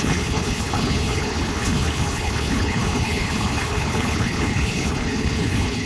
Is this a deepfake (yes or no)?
yes